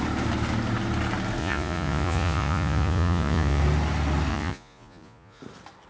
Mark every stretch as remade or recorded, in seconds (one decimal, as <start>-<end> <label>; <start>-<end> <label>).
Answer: 0.0-1.4 recorded; 1.4-3.6 remade; 3.6-4.3 recorded; 4.3-5.4 remade; 5.4-5.9 recorded